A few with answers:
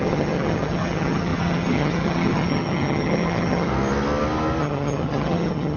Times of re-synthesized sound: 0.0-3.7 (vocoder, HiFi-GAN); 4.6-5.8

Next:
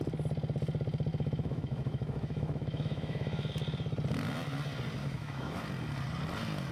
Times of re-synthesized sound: 1.1-3.5 (autoencoder, DAC-VAE); 5.0-5.6

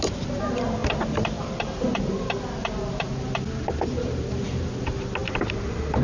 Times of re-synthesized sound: none

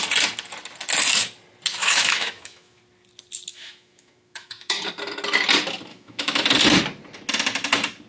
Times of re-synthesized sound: 1.8-2.8 (autoencoder, DAC-VAE); 3.5-4.8; 5.9-6.4

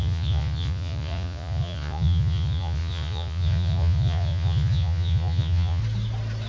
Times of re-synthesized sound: 0.0-5.8 (vocoder, Vocos)

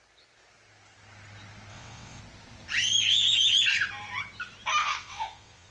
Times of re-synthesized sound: 1.7-2.2 (vocoder, WaveNeXt); 4.8-5.7

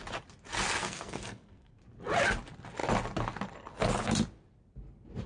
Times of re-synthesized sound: 0.8-1.8 (codec, SNAC)